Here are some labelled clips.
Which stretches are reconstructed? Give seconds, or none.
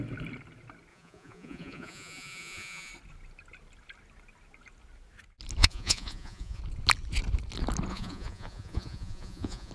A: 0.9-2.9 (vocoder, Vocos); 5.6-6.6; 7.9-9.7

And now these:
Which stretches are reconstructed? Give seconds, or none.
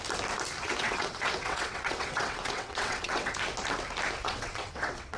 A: 0.6-3.3 (vocoder, WaveNeXt); 4.2-5.2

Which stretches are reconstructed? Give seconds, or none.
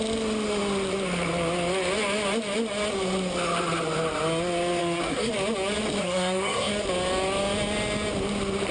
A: 4.8-5.3 (codec, SNAC); 6.0-6.7